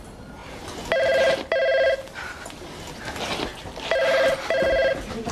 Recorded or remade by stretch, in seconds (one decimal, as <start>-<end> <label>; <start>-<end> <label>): 0.0-5.3 recorded